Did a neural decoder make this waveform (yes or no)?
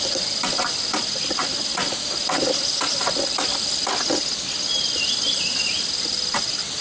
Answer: no